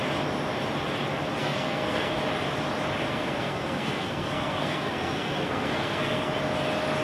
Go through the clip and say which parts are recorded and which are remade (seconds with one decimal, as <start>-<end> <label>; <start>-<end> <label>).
0.0-1.4 recorded; 1.4-2.2 remade; 2.2-3.1 recorded; 3.1-6.3 remade; 6.3-7.0 recorded